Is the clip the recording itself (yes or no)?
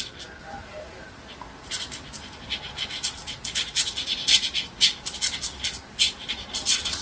yes